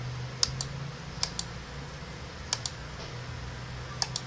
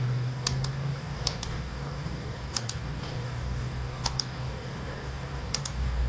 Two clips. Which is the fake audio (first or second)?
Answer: second